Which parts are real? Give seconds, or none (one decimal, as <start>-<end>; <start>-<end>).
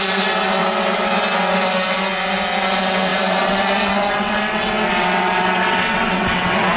0.6-2.6